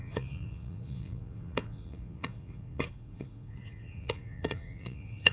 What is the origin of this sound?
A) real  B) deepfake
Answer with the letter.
B